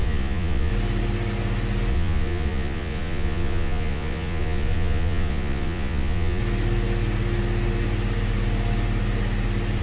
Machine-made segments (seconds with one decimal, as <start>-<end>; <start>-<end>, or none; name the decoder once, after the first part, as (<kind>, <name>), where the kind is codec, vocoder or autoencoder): 0.0-0.7 (vocoder, Vocos); 1.9-6.4